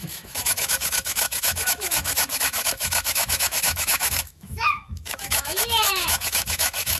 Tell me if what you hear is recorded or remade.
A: remade